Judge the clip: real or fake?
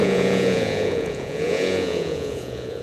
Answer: fake